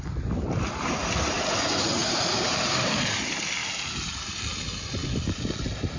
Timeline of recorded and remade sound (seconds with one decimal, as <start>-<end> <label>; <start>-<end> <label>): 0.0-2.0 recorded; 2.0-3.0 remade; 3.0-6.0 recorded